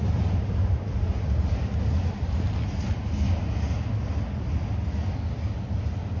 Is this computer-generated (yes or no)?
no